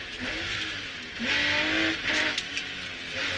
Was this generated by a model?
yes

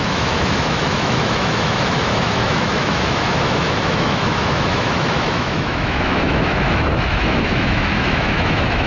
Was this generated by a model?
yes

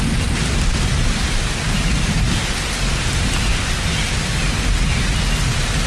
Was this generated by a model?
no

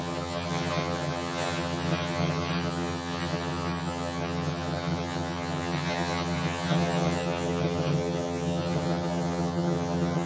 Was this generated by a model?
yes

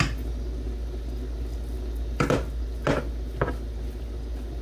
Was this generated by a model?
no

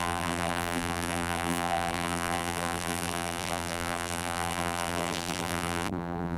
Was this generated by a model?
yes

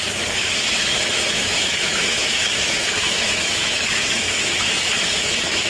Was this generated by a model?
yes